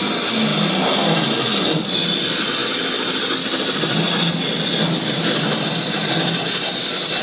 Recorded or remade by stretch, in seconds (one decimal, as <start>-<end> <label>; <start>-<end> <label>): 0.0-7.2 recorded